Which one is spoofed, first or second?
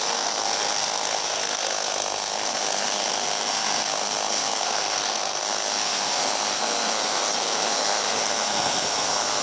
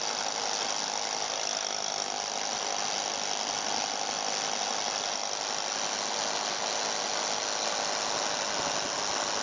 first